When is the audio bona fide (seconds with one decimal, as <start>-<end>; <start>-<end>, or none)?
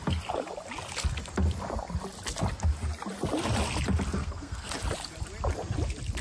0.0-4.2; 4.7-6.2